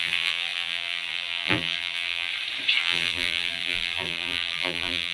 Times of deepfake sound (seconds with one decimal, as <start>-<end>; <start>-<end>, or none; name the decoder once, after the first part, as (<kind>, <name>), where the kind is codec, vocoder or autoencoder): 0.0-2.3 (vocoder, BigVGAN v2); 2.8-5.1